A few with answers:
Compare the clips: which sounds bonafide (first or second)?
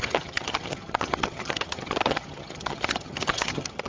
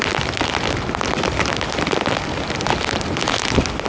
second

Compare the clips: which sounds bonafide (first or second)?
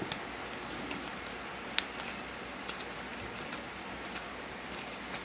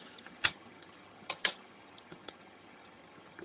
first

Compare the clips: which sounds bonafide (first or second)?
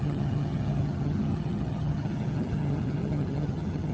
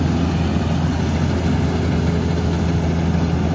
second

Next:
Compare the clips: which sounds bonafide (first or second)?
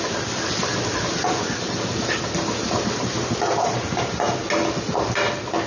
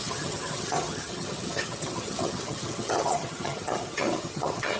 first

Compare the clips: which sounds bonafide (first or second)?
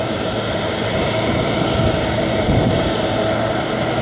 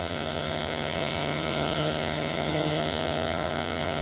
first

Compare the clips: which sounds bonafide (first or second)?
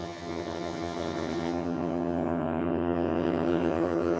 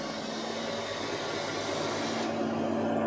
second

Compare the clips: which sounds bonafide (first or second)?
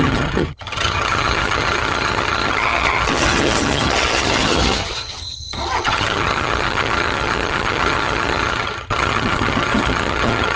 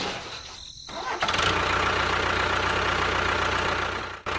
second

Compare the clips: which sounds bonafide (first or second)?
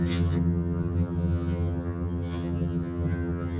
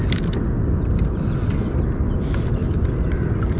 second